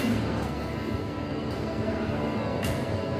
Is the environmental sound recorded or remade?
remade